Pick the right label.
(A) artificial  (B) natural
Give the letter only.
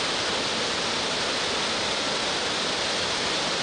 B